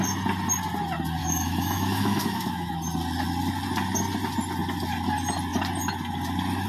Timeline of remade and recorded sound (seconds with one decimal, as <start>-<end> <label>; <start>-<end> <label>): 0.0-1.2 recorded; 1.2-2.7 remade; 2.7-6.7 recorded